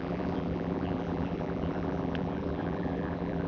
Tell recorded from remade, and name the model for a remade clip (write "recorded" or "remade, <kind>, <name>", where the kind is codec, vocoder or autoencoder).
remade, vocoder, BigVGAN v2